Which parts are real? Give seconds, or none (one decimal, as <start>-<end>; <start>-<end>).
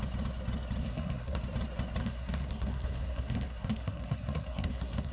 0.0-0.8; 1.4-2.0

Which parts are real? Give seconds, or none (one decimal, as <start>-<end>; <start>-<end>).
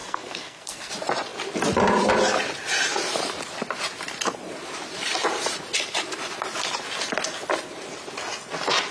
0.9-8.9